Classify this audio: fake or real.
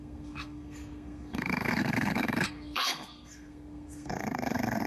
fake